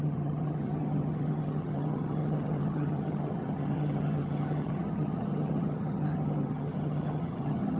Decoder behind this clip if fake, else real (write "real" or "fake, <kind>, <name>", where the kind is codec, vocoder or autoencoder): fake, vocoder, HiFi-GAN